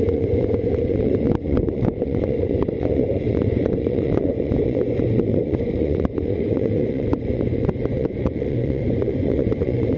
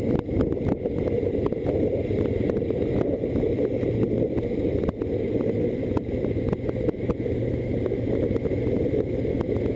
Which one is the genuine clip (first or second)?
second